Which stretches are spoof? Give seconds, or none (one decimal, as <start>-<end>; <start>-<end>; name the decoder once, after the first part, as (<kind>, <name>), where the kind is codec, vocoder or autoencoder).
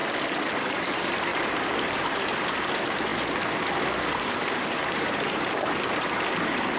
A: 0.7-1.3 (vocoder, BigVGAN v2); 1.8-3.1; 4.6-6.8